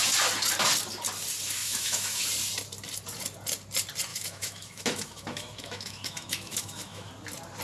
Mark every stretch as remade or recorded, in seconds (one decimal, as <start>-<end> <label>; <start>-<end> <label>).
0.0-1.6 recorded; 1.6-2.2 remade; 2.2-4.1 recorded; 4.1-7.1 remade; 7.1-7.6 recorded